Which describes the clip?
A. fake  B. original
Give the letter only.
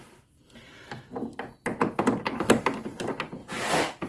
B